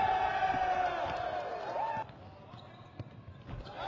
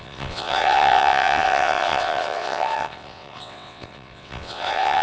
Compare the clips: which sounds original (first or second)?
first